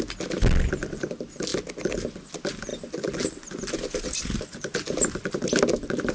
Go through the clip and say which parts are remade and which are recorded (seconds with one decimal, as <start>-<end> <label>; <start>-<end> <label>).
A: 0.0-6.1 recorded